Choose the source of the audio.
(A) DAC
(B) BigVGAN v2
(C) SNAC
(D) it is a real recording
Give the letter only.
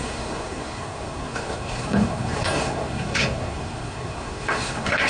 C